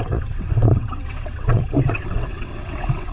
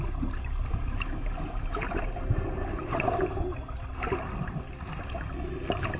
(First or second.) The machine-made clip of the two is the first